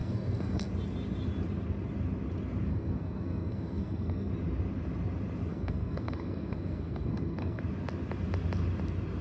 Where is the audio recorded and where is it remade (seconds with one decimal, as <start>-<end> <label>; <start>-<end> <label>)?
0.0-0.7 remade; 0.7-2.7 recorded; 2.7-4.3 remade; 4.3-5.5 recorded; 5.5-7.6 remade; 7.6-9.2 recorded